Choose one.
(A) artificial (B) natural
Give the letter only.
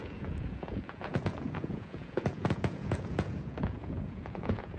A